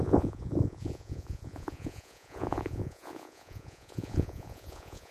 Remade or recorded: remade